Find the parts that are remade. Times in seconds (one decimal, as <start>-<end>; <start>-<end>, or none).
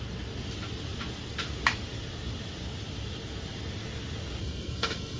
4.4-5.2